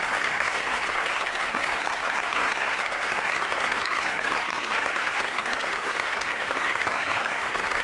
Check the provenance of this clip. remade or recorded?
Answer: remade